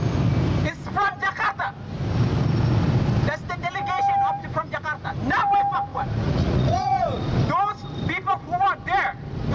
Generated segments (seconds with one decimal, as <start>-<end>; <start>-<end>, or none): 5.9-7.2